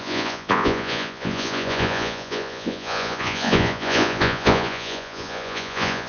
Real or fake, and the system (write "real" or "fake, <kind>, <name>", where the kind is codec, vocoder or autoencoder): fake, vocoder, Vocos